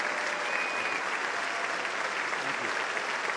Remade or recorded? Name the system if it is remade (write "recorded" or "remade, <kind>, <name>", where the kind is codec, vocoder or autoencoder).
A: recorded